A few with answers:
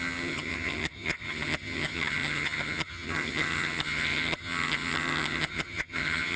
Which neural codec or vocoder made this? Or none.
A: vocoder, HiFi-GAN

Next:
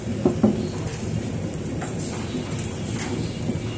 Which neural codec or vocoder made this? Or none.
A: none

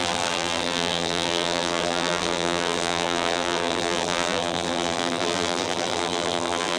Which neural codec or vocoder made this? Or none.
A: vocoder, BigVGAN v2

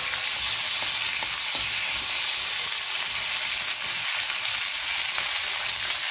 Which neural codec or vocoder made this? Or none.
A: none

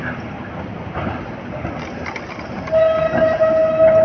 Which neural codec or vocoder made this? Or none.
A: none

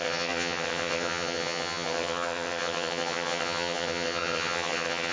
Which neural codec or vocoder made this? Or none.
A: vocoder, HiFi-GAN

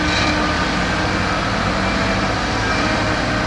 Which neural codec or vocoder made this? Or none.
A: none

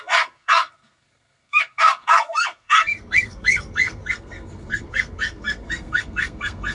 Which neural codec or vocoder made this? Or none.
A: codec, SNAC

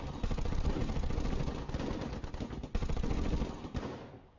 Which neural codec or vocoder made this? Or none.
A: none